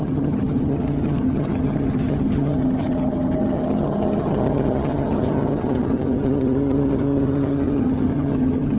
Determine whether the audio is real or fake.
fake